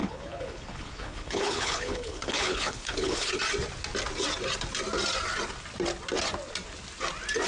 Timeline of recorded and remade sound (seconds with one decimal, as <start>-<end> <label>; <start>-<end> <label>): 0.0-3.3 remade; 3.3-7.5 recorded